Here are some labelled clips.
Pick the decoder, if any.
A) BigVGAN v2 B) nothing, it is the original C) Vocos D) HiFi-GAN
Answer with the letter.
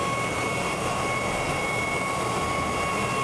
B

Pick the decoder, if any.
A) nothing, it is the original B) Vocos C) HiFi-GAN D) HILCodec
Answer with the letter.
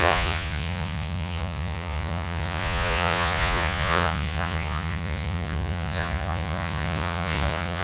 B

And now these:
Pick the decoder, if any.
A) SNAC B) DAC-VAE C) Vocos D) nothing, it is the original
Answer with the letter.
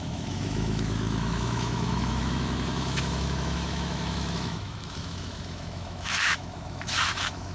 B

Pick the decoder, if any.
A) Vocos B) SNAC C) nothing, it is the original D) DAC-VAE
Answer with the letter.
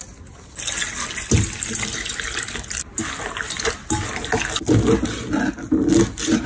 C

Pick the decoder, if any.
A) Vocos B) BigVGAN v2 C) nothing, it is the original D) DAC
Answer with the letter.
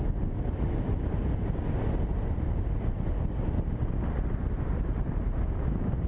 C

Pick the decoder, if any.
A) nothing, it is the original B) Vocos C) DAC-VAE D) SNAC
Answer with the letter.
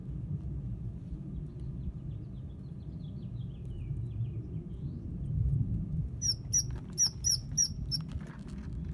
A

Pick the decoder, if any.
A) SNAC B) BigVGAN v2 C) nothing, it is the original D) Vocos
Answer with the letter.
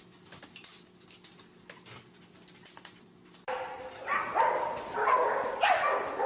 C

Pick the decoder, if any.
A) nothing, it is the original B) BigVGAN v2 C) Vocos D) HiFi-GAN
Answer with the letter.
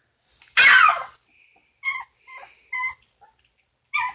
A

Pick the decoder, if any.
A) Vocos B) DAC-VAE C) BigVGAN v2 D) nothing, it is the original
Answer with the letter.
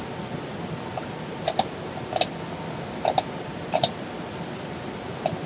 D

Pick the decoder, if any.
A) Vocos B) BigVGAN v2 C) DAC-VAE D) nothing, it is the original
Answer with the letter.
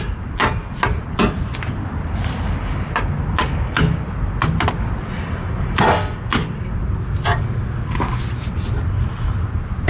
D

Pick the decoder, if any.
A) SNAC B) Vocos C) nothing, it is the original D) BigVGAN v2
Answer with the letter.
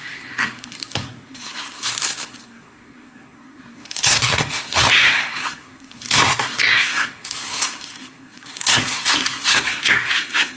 A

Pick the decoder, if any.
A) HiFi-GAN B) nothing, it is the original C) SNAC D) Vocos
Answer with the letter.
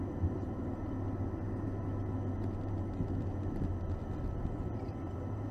B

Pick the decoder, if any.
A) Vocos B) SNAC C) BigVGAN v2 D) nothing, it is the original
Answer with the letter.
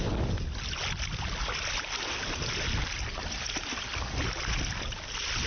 D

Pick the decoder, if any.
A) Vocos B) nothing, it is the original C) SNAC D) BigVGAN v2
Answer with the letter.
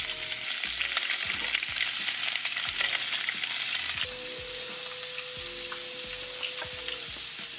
B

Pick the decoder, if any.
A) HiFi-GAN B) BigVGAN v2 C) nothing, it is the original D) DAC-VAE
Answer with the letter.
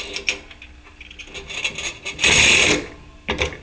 C